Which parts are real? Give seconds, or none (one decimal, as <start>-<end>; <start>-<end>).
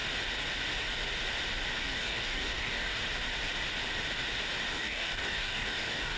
0.0-1.8; 3.0-4.7